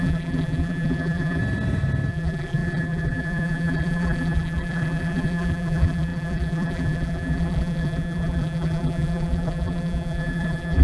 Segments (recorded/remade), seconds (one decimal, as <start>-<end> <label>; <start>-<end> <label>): 0.0-1.4 remade; 1.4-2.1 recorded; 2.1-10.8 remade